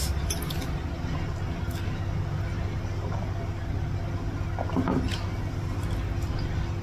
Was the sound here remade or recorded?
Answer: recorded